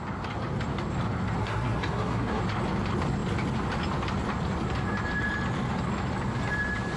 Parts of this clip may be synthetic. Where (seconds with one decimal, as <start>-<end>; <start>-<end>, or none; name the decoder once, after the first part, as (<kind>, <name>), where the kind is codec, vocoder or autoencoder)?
1.4-2.4 (codec, SNAC)